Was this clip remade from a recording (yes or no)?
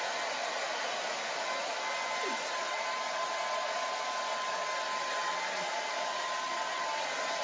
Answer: no